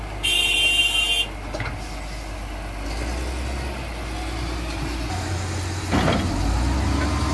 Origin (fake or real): real